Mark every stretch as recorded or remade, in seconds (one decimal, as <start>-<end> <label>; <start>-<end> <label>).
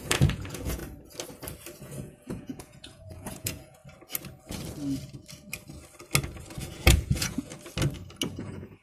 0.0-0.8 remade; 0.8-1.8 recorded; 1.8-3.8 remade; 3.8-6.6 recorded; 6.6-7.5 remade; 7.5-8.4 recorded; 8.4-8.8 remade